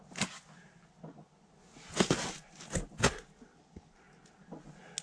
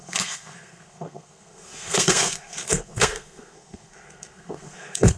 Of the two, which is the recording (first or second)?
first